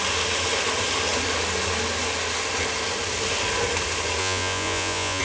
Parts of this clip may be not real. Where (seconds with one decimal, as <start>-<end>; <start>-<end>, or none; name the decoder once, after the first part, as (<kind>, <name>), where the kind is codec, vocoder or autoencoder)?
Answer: 4.2-5.2 (vocoder, Vocos)